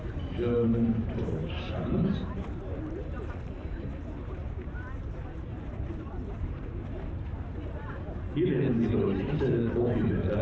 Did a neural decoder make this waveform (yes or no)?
yes